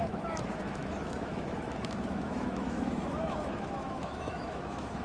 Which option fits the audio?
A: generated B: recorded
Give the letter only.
A